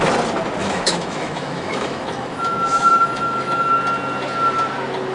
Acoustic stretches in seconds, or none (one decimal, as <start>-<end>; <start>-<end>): 0.0-0.6; 3.7-5.1